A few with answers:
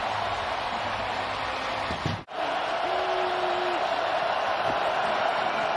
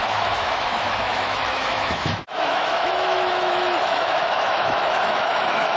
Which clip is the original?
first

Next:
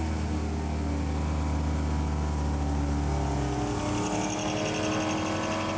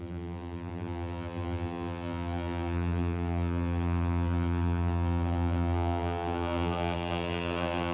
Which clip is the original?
first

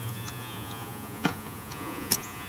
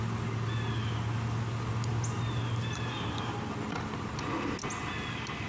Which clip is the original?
second